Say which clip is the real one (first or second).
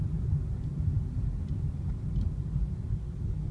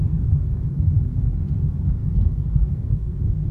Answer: first